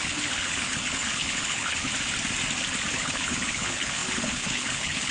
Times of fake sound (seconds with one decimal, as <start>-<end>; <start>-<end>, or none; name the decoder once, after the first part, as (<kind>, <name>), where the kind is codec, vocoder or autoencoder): 0.0-1.9 (codec, HILCodec); 2.9-5.1